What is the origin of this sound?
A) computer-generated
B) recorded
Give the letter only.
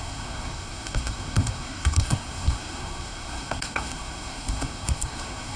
A